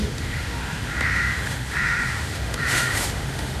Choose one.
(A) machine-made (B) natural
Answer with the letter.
A